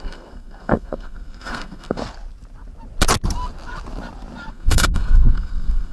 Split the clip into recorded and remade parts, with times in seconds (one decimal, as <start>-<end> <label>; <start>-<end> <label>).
0.0-2.0 remade; 2.0-4.5 recorded; 4.5-5.9 remade